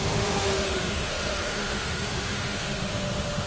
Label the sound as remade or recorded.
remade